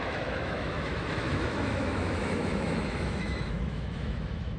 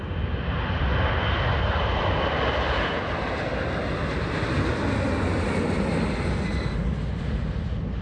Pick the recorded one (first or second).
second